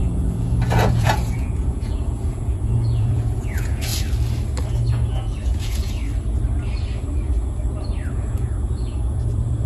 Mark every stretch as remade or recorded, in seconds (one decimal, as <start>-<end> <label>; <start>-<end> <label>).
0.0-3.9 remade; 3.9-4.9 recorded; 4.9-6.0 remade; 6.0-8.1 recorded; 8.1-9.7 remade